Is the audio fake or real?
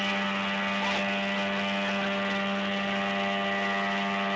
real